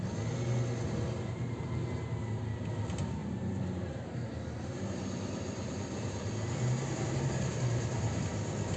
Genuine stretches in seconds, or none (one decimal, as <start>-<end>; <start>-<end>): 0.0-3.2; 8.2-8.8